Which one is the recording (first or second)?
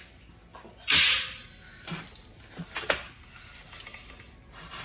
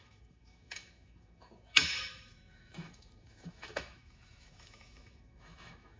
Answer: first